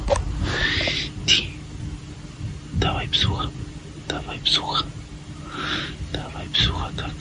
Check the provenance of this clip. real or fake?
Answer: real